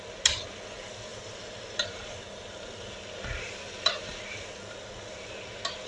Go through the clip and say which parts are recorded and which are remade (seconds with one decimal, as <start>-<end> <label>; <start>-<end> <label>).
0.0-5.9 recorded